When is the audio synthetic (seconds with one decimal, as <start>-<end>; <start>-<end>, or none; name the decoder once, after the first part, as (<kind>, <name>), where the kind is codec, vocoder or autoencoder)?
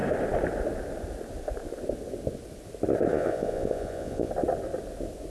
3.1-4.3 (vocoder, Vocos)